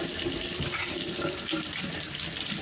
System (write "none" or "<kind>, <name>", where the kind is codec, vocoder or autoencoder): none